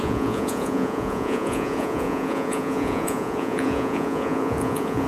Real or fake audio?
fake